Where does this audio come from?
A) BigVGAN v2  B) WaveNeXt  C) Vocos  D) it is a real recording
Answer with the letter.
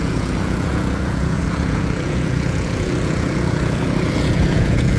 C